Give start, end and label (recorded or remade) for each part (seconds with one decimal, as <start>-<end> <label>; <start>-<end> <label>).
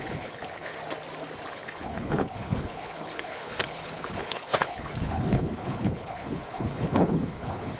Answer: 0.0-0.7 remade; 0.7-1.5 recorded; 1.5-7.8 remade